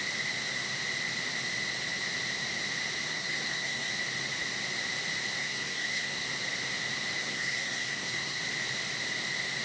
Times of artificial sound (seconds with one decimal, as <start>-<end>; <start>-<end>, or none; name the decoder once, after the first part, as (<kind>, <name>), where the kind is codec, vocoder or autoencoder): 3.1-3.9 (codec, SNAC); 5.4-6.2; 7.2-8.4